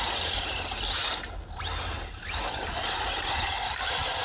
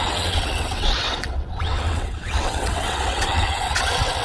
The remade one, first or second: second